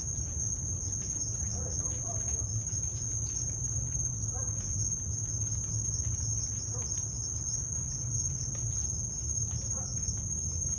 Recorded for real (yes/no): yes